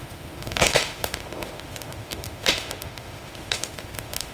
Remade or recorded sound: remade